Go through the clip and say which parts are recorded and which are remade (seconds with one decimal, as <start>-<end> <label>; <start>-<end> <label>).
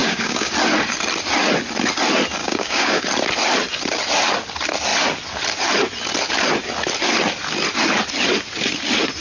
0.0-0.5 remade; 0.5-2.4 recorded; 2.4-3.0 remade; 3.0-9.2 recorded